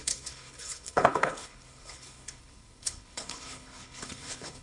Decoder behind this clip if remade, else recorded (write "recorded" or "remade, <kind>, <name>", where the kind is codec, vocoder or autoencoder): remade, codec, HILCodec